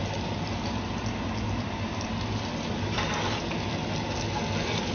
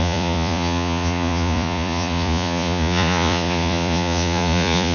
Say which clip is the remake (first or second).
second